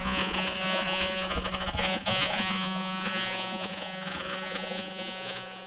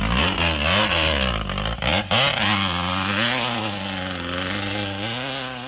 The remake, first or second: first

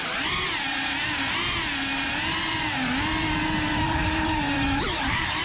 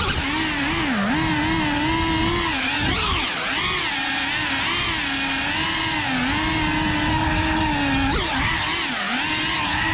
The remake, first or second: first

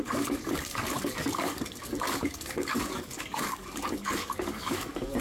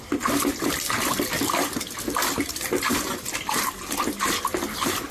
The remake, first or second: first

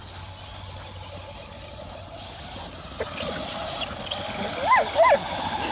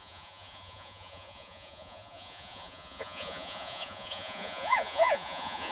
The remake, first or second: second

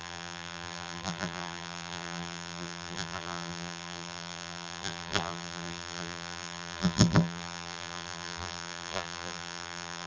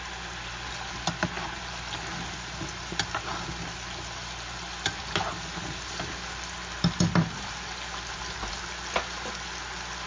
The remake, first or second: first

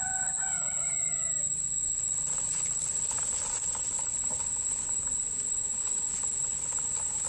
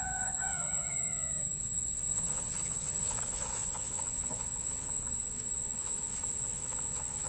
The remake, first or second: second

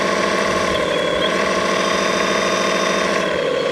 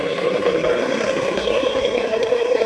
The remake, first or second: second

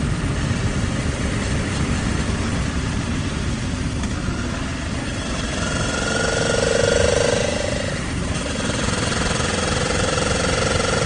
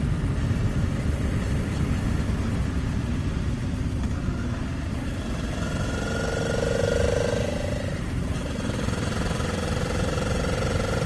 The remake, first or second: first